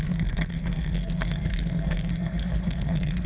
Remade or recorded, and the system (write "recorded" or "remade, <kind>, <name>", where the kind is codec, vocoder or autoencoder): remade, codec, SNAC